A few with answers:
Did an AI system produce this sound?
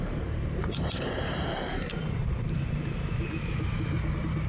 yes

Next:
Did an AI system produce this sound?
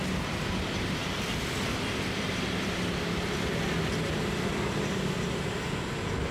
no